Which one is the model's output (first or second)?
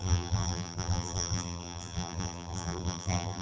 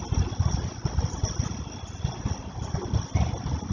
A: first